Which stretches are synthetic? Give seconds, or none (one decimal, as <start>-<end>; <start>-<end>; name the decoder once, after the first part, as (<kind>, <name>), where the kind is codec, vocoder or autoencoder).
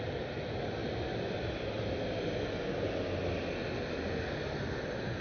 none